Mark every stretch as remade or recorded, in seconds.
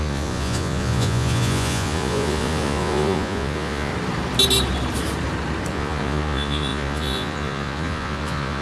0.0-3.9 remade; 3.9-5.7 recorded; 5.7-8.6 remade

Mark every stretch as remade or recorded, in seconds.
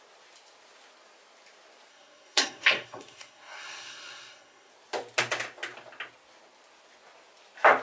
0.0-1.9 recorded; 1.9-4.7 remade; 4.7-7.8 recorded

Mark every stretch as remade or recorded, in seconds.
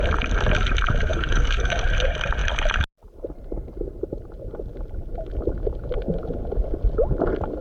0.0-1.1 recorded; 1.1-1.8 remade; 1.8-7.6 recorded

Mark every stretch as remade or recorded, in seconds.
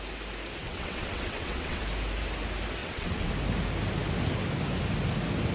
0.0-0.6 recorded; 0.6-1.8 remade; 1.8-2.8 recorded; 2.8-3.3 remade; 3.3-5.5 recorded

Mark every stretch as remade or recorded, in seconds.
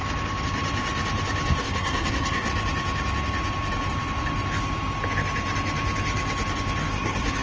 0.0-1.6 recorded; 1.6-2.5 remade; 2.5-6.9 recorded; 6.9-7.4 remade